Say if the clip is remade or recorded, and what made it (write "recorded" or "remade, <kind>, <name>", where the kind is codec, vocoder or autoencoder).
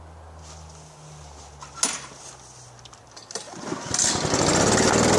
recorded